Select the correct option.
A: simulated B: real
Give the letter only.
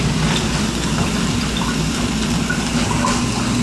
A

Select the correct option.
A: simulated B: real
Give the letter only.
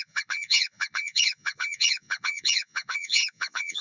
A